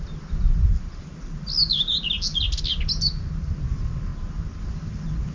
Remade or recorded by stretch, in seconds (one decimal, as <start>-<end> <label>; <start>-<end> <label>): 0.0-5.3 recorded